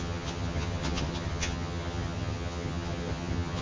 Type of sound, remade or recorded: remade